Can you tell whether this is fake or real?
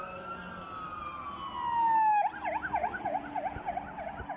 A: real